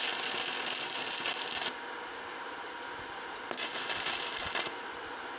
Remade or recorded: recorded